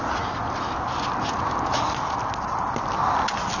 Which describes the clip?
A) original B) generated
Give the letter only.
A